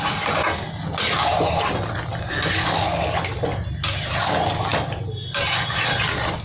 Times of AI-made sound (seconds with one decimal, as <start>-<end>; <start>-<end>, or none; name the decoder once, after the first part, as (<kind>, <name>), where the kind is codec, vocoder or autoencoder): none